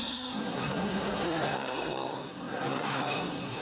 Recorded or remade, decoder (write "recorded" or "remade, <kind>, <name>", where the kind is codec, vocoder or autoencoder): remade, codec, SNAC